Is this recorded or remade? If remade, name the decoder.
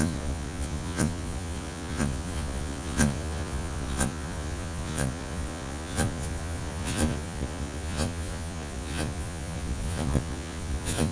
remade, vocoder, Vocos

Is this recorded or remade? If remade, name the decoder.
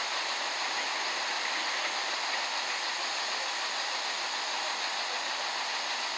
recorded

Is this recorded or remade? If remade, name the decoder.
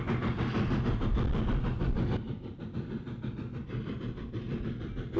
recorded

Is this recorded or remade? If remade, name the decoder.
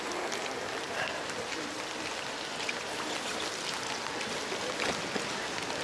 recorded